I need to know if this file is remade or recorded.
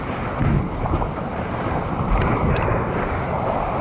remade